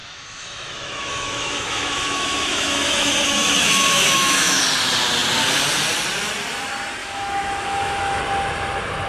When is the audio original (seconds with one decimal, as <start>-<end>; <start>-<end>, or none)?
4.6-7.0; 8.2-9.1